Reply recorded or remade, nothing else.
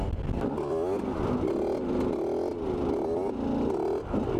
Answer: recorded